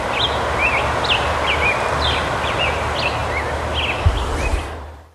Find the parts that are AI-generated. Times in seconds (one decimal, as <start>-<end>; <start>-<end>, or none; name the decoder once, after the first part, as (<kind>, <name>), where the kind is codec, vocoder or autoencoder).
4.5-5.1 (vocoder, BigVGAN v2)